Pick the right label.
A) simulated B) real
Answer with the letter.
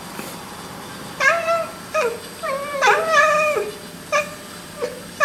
B